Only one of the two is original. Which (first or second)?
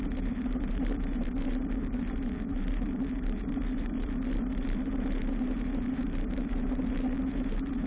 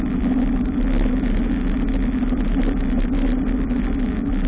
second